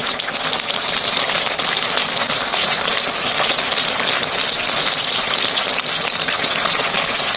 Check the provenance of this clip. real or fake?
real